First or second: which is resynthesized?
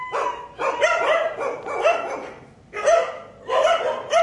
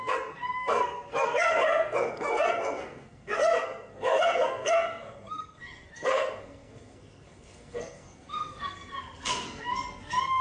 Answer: second